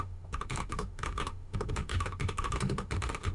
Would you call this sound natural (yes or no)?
no